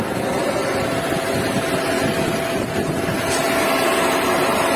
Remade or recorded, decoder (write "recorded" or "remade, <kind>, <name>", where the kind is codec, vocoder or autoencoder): recorded